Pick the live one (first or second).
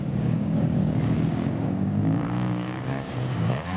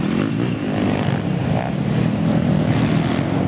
second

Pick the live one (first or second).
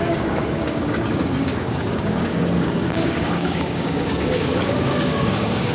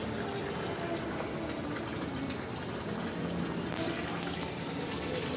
second